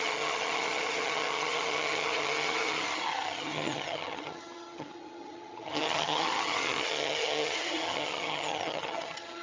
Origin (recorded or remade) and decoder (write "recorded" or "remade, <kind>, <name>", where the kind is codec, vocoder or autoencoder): remade, vocoder, HiFi-GAN